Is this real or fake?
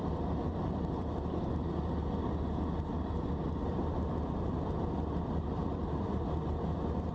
fake